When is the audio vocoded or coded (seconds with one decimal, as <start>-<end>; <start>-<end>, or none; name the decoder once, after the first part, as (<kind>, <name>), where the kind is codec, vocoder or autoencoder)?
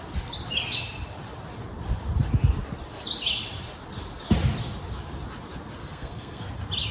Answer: 5.8-6.5 (codec, SNAC)